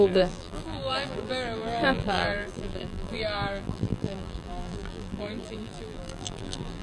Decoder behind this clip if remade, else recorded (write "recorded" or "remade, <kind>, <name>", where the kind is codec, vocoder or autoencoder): remade, vocoder, BigVGAN v2